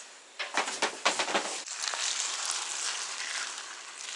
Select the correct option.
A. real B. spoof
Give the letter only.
A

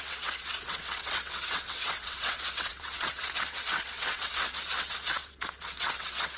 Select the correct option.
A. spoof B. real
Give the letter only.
A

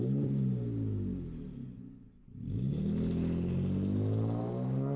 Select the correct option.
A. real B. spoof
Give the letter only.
A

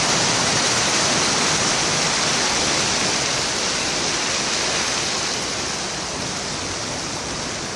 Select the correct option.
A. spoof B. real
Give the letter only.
B